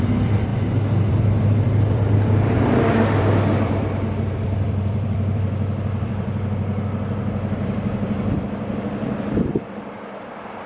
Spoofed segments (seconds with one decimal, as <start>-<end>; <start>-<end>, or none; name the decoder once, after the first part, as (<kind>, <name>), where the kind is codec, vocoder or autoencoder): 0.0-0.5 (vocoder, BigVGAN v2); 1.1-10.7